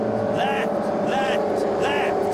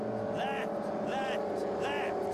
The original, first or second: second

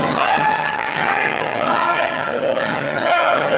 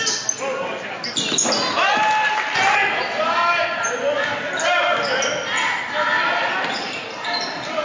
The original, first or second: second